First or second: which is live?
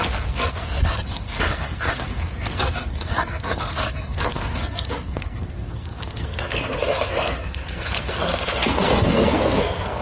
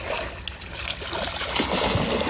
second